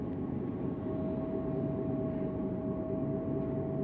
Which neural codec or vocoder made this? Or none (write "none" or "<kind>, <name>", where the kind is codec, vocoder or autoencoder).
none